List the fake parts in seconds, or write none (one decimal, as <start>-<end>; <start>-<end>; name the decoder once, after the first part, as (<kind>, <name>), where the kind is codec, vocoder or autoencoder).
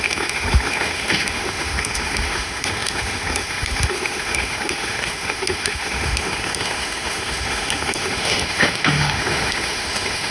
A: 0.0-10.3 (autoencoder, DAC-VAE)